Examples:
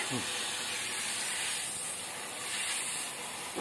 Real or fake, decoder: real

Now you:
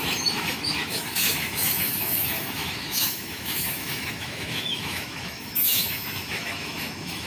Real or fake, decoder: fake, autoencoder, DAC-VAE